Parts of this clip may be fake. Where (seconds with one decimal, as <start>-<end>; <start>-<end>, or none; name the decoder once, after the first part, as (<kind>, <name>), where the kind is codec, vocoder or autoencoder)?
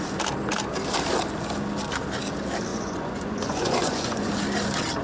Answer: 2.7-4.3 (vocoder, Vocos)